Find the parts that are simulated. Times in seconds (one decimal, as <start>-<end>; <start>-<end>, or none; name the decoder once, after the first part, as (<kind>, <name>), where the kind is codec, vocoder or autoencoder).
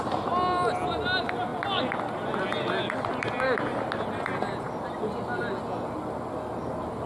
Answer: none